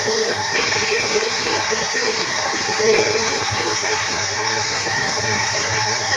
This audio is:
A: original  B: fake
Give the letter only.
B